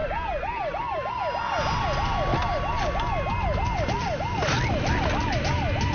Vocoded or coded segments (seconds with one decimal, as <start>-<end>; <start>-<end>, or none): 0.0-1.1; 2.3-5.1